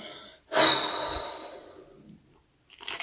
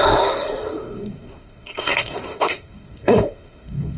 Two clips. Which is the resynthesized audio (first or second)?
second